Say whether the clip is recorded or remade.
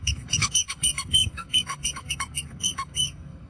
remade